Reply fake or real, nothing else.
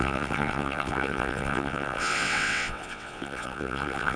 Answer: fake